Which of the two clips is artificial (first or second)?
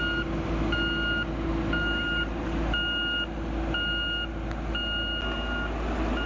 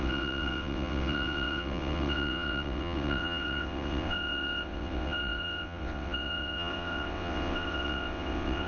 second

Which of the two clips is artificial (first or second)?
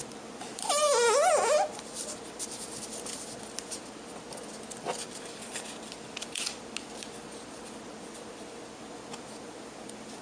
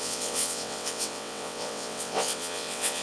second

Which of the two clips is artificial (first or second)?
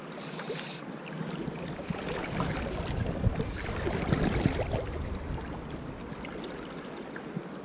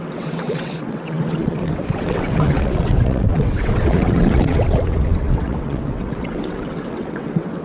second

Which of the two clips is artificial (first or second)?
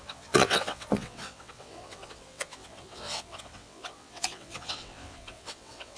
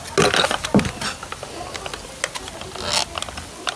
first